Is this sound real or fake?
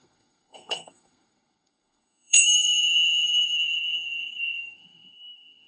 fake